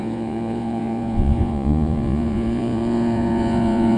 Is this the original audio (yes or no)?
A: no